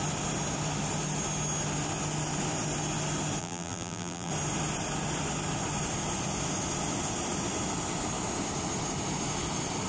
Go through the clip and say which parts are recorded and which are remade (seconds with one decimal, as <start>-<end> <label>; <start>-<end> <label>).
0.0-3.4 recorded; 3.4-4.3 remade; 4.3-9.9 recorded